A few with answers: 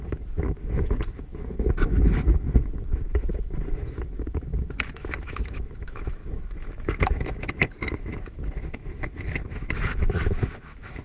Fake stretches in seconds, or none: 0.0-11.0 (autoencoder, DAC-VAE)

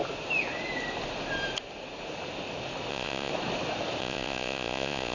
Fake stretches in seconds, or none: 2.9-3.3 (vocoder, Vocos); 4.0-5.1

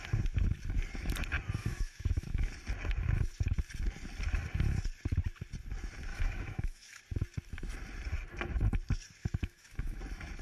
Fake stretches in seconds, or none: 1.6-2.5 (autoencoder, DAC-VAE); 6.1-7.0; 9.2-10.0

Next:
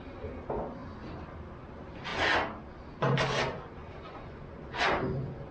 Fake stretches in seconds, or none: 3.8-4.5 (vocoder, Vocos)

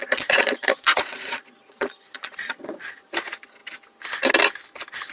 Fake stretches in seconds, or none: 0.0-3.1 (vocoder, Vocos)